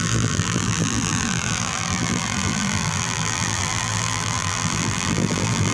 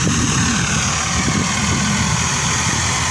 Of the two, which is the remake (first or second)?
first